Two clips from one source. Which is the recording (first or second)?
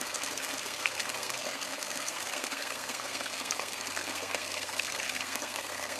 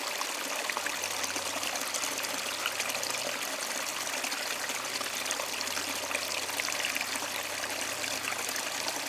second